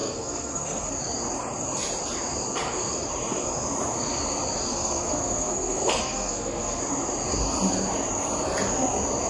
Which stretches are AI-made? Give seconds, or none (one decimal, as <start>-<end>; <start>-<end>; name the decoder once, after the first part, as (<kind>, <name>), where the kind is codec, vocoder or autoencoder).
0.0-1.0 (codec, SNAC); 4.7-6.8